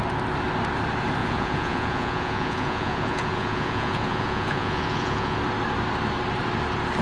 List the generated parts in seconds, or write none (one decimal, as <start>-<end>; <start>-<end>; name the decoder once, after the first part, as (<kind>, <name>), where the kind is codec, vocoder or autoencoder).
1.2-5.4 (vocoder, Vocos)